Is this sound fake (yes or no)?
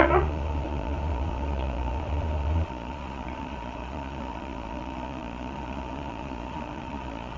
yes